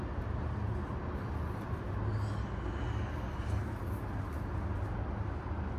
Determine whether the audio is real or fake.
real